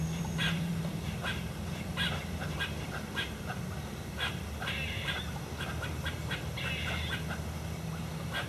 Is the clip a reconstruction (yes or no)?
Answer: yes